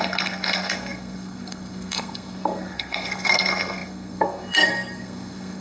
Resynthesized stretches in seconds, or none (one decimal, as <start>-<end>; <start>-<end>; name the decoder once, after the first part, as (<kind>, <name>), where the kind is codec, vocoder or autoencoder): 0.0-5.6 (codec, SNAC)